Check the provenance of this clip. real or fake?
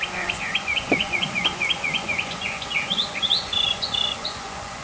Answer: fake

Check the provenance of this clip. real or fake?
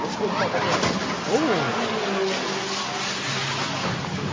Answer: real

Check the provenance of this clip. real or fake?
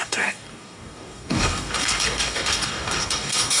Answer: fake